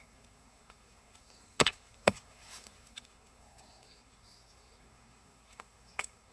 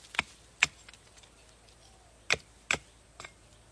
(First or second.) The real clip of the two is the second